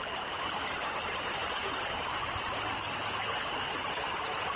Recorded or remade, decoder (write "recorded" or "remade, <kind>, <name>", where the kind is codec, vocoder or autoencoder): recorded